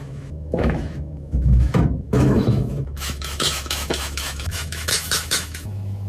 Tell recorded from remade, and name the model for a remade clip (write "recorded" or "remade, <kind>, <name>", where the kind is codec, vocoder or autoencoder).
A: remade, autoencoder, DAC-VAE